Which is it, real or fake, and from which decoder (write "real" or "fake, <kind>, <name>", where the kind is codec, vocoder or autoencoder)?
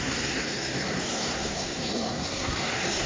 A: fake, codec, SNAC